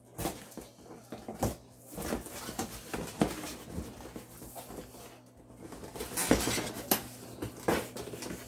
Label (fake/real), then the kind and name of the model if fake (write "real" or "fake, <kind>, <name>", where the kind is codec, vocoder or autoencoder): real